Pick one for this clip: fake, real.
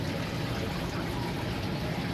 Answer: real